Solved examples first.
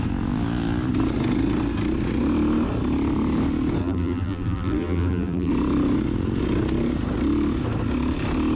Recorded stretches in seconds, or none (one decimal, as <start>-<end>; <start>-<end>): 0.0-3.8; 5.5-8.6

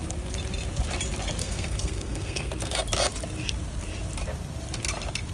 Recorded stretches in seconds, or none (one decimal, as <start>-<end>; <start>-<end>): 0.0-1.4; 2.5-5.3

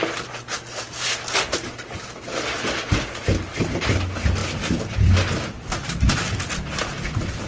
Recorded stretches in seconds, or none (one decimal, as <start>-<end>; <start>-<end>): 0.0-7.5